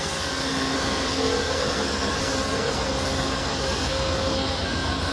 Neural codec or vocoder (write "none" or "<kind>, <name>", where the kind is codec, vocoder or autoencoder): codec, SNAC